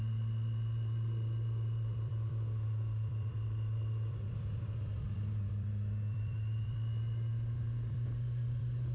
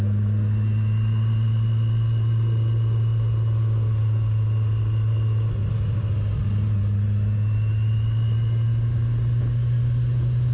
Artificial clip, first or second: first